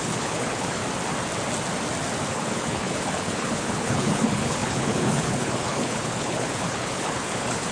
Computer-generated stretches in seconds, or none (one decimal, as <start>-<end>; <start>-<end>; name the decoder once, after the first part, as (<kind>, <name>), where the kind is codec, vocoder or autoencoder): 0.0-0.8 (codec, HILCodec); 2.3-7.7